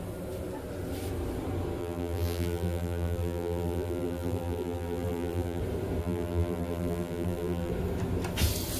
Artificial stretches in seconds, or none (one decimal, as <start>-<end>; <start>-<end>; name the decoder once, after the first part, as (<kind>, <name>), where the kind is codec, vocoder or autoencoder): 1.8-5.6 (vocoder, BigVGAN v2); 6.0-7.7